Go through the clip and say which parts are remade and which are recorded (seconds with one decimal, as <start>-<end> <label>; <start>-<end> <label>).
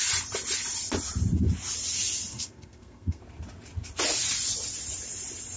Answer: 0.0-2.3 recorded; 2.3-3.2 remade; 3.2-5.6 recorded